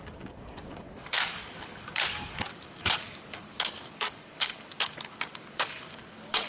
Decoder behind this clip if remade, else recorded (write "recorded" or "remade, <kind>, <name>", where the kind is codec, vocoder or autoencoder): remade, codec, DAC